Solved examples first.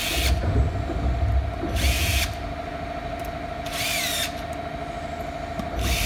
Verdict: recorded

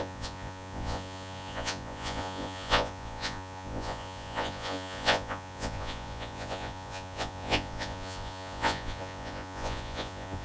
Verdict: remade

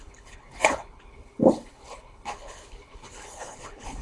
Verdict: remade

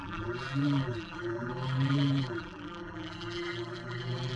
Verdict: remade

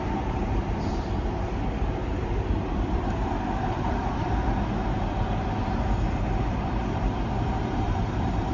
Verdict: remade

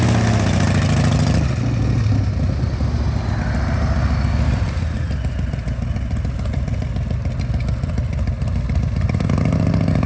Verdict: recorded